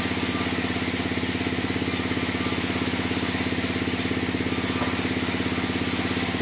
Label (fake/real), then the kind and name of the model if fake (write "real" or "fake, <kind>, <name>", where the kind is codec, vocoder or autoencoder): real